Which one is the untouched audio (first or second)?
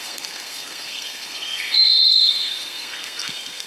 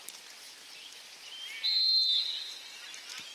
second